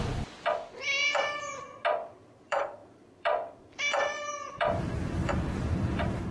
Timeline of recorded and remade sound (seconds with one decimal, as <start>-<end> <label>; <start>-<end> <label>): 0.0-0.8 remade; 0.8-2.1 recorded; 2.1-6.3 remade